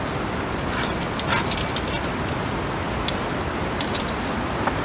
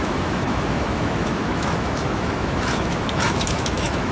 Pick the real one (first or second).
first